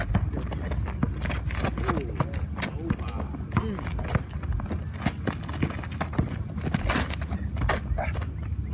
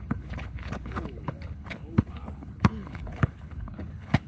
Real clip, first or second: first